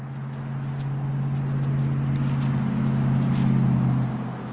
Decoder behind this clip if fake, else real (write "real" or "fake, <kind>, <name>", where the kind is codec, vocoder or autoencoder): real